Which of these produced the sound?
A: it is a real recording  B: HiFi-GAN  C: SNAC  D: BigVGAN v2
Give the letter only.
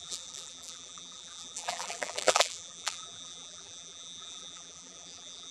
D